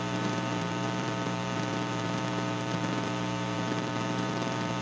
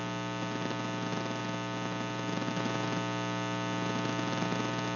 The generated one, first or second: first